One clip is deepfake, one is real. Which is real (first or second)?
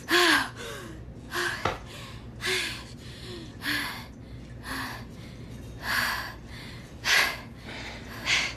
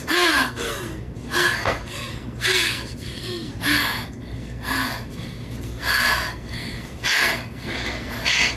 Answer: first